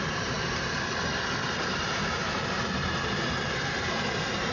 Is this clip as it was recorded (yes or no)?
yes